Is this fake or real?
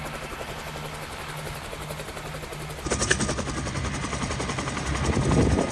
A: real